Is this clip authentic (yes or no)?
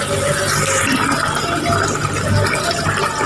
yes